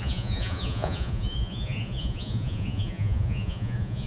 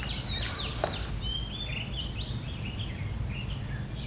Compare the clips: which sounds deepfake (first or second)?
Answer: first